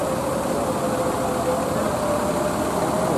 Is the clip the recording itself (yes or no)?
yes